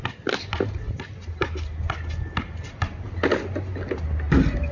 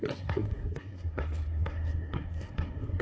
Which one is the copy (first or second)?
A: second